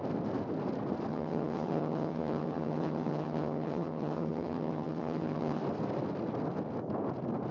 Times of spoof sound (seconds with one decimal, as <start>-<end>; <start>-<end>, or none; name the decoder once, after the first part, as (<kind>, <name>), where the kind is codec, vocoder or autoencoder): 1.1-5.6 (vocoder, HiFi-GAN)